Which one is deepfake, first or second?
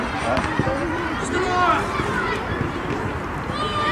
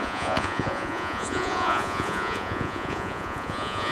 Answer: second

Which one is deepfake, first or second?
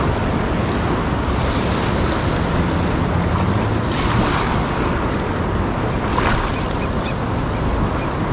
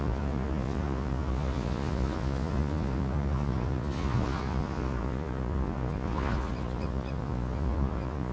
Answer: second